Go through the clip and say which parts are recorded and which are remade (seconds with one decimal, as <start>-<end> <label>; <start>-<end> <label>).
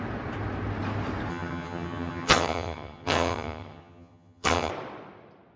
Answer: 0.0-1.3 recorded; 1.3-4.7 remade; 4.7-5.6 recorded